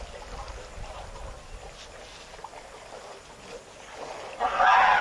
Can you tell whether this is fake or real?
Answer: real